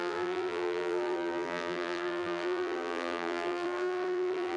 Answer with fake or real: fake